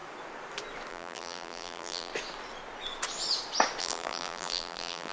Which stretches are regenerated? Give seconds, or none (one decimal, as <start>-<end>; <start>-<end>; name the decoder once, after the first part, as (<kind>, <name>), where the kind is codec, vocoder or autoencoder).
0.9-2.1 (vocoder, BigVGAN v2); 3.8-5.1